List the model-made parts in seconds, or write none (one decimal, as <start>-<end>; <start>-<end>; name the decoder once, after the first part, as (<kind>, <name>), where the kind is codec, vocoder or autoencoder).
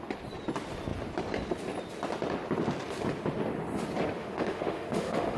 4.2-5.4 (autoencoder, DAC-VAE)